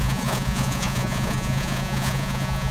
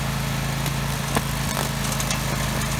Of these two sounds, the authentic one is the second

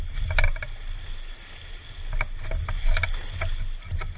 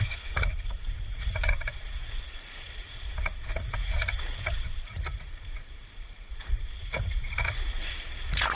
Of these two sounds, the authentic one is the first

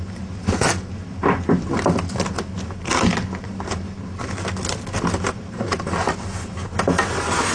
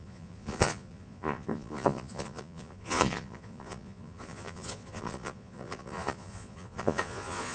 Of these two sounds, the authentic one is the first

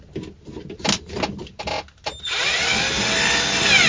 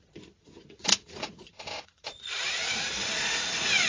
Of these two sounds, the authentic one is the first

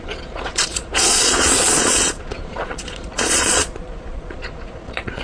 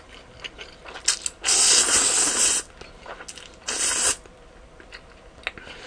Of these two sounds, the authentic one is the second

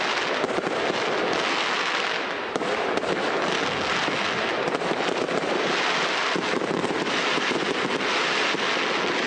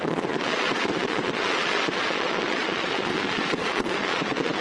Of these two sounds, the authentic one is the first